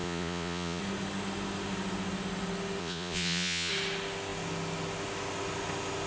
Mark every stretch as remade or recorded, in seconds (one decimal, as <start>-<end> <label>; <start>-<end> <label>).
0.0-0.8 remade; 0.8-2.8 recorded; 2.8-3.7 remade; 3.7-6.1 recorded